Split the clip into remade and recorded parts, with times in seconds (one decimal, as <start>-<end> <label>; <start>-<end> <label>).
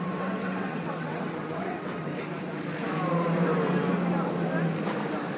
0.0-2.1 remade; 2.1-5.4 recorded